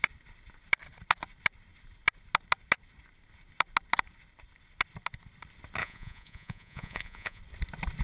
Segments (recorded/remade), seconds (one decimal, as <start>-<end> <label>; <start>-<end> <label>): 0.0-5.8 recorded; 5.8-7.4 remade; 7.4-8.0 recorded